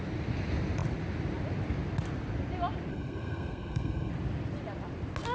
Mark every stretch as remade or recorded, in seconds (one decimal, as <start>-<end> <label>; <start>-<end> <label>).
0.0-2.9 recorded; 2.9-4.1 remade; 4.1-5.3 recorded